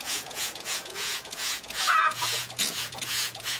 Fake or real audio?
fake